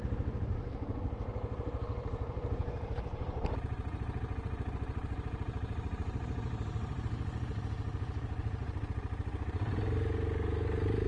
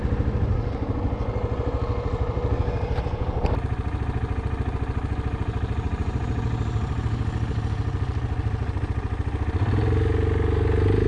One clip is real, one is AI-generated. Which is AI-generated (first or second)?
first